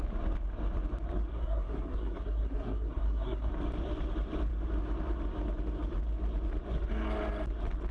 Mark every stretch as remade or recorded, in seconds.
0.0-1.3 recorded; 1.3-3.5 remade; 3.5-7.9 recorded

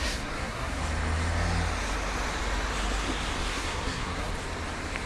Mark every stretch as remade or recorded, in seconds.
0.0-0.8 remade; 0.8-3.5 recorded; 3.5-4.3 remade; 4.3-5.1 recorded

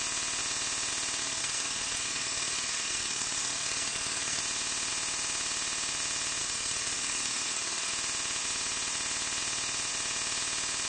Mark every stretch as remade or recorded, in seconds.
0.0-1.2 recorded; 1.2-4.4 remade; 4.4-6.4 recorded; 6.4-7.9 remade; 7.9-10.9 recorded

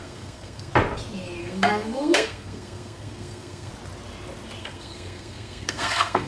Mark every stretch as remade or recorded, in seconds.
0.0-0.7 remade; 0.7-1.4 recorded; 1.4-3.7 remade; 3.7-4.6 recorded; 4.6-6.3 remade

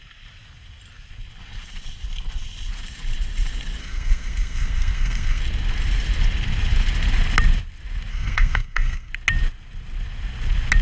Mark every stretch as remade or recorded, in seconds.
0.0-3.8 recorded; 3.8-5.4 remade; 5.4-8.1 recorded; 8.1-9.1 remade; 9.1-10.8 recorded

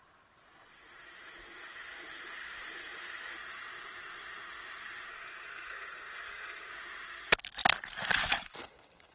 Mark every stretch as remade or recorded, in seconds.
0.0-5.1 recorded; 5.1-6.7 remade; 6.7-9.1 recorded

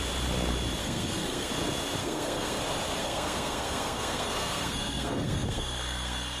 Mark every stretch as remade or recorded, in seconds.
0.0-0.8 recorded; 0.8-1.5 remade; 1.5-2.0 recorded; 2.0-2.6 remade; 2.6-3.0 recorded; 3.0-6.4 remade